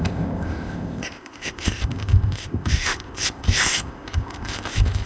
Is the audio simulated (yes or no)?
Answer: yes